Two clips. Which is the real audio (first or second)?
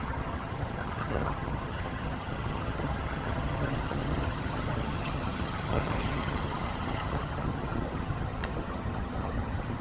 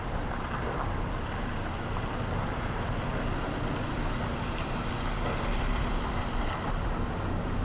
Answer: second